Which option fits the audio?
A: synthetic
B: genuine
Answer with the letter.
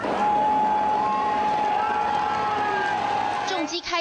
B